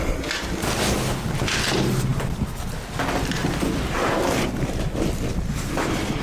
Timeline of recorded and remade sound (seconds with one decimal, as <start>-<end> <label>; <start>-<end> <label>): 0.0-6.2 recorded